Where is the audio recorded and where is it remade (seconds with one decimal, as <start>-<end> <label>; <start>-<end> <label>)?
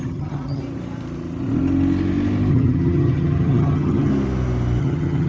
0.0-0.6 remade; 0.6-2.5 recorded; 2.5-4.1 remade; 4.1-4.8 recorded; 4.8-5.3 remade